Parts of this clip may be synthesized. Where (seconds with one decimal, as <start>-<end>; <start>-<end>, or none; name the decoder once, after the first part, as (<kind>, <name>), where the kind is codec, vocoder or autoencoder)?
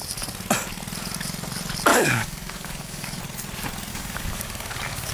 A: 1.9-3.2 (codec, DAC); 3.9-5.1